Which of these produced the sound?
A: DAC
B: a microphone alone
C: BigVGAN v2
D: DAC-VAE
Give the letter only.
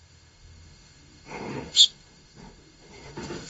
D